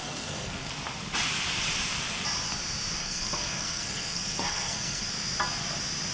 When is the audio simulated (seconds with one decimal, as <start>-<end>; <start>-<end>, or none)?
0.0-0.7; 3.0-5.1